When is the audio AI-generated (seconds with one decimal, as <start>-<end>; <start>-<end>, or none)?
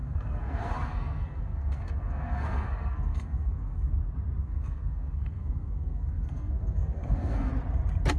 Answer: 0.0-3.9; 4.4-7.5